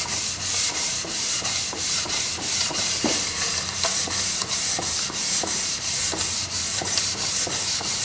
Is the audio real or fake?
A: fake